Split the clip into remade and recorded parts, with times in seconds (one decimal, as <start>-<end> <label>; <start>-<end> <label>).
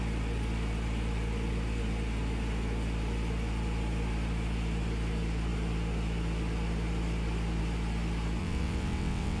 0.0-8.4 recorded; 8.4-9.4 remade